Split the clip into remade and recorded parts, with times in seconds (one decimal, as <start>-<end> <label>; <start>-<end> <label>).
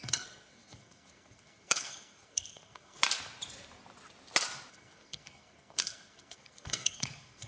0.0-3.0 remade; 3.0-4.7 recorded; 4.7-7.5 remade